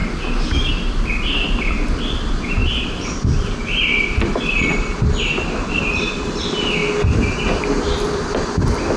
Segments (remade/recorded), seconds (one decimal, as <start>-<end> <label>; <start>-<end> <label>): 0.0-0.7 recorded; 0.7-6.8 remade; 6.8-7.8 recorded; 7.8-9.0 remade